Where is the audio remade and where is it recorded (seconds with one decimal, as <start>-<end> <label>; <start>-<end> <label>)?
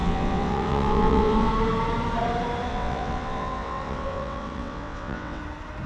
0.0-1.5 remade; 1.5-2.7 recorded; 2.7-5.4 remade; 5.4-5.9 recorded